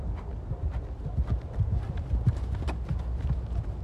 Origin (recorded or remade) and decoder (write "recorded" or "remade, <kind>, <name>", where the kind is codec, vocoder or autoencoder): recorded